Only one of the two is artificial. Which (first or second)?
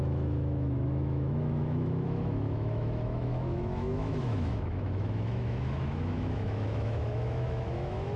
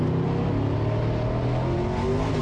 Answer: first